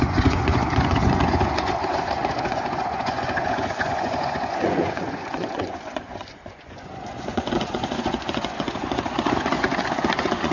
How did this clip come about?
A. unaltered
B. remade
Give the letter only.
B